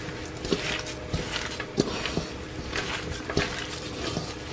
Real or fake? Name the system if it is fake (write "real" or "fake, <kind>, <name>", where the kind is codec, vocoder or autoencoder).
real